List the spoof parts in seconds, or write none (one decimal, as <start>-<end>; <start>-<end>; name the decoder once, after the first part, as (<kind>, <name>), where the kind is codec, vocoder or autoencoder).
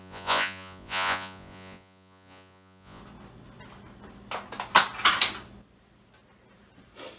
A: 0.0-3.0 (vocoder, Vocos)